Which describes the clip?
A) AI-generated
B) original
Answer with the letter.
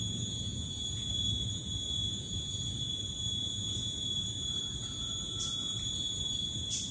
A